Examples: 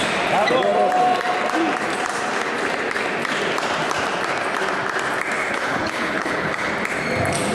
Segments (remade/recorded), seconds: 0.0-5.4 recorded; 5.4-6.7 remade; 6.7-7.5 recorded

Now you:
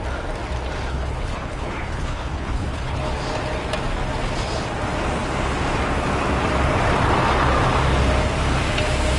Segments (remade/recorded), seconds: 0.0-0.9 recorded; 0.9-3.0 remade; 3.0-9.2 recorded

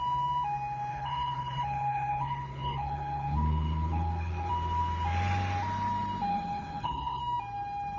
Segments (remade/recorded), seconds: 0.0-0.9 recorded; 0.9-4.5 remade; 4.5-6.3 recorded; 6.3-7.2 remade; 7.2-8.0 recorded

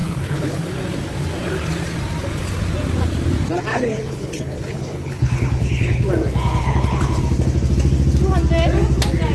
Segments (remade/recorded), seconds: 0.0-0.7 remade; 0.7-3.7 recorded; 3.7-6.1 remade; 6.1-6.6 recorded; 6.6-7.2 remade; 7.2-9.3 recorded

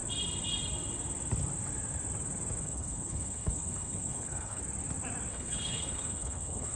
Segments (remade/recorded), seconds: 0.0-2.6 recorded; 2.6-4.6 remade; 4.6-5.3 recorded; 5.3-6.8 remade